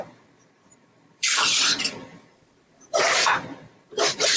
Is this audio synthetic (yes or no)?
yes